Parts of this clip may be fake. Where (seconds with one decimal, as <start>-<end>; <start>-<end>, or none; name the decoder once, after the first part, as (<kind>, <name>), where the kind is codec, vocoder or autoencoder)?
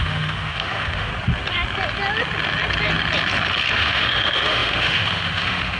0.0-1.1 (autoencoder, DAC-VAE); 3.7-5.8